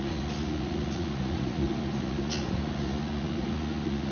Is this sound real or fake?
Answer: fake